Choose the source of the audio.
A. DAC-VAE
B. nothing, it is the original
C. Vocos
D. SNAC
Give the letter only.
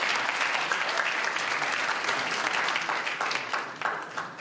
B